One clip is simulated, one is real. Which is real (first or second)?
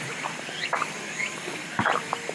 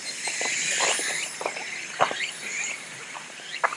first